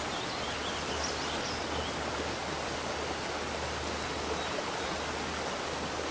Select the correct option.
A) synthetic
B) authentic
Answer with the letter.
B